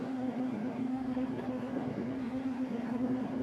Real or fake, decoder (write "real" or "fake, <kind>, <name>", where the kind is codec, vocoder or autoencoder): fake, codec, SNAC